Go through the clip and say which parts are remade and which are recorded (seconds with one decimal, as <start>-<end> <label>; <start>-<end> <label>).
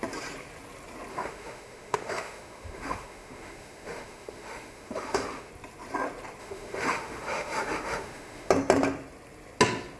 0.0-1.1 recorded; 1.1-5.5 remade; 5.5-6.4 recorded; 6.4-8.5 remade; 8.5-10.0 recorded